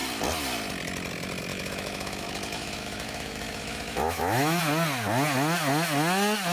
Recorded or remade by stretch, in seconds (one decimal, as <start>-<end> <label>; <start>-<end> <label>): 0.0-1.5 recorded; 1.5-4.6 remade; 4.6-6.5 recorded